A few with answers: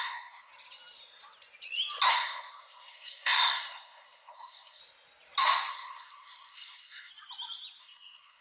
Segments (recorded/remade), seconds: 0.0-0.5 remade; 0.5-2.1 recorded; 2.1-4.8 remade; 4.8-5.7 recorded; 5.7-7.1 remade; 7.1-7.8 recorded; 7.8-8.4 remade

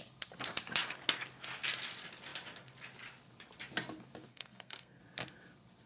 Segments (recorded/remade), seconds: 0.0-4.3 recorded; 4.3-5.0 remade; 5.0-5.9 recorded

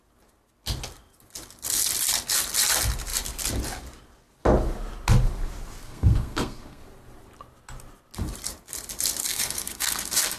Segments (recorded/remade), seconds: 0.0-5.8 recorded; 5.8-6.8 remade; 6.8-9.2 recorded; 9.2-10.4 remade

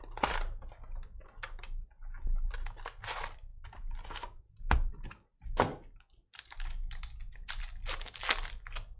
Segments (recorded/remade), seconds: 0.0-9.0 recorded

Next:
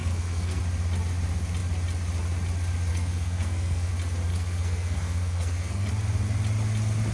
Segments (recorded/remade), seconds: 0.0-0.6 remade; 0.6-2.9 recorded; 2.9-3.9 remade; 3.9-4.3 recorded; 4.3-5.9 remade; 5.9-7.1 recorded

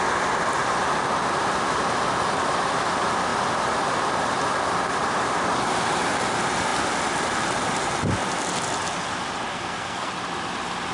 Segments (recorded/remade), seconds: 0.0-9.5 recorded; 9.5-10.1 remade; 10.1-10.9 recorded

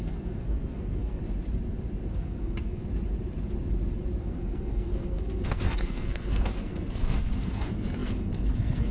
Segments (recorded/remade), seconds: 0.0-1.2 remade; 1.2-2.1 recorded; 2.1-2.8 remade; 2.8-4.2 recorded; 4.2-8.9 remade

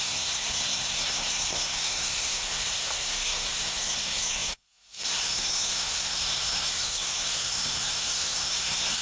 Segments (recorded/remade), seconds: 0.0-9.0 remade